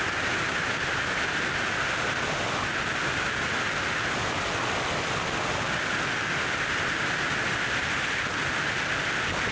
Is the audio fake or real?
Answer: real